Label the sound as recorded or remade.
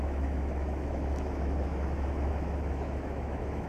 remade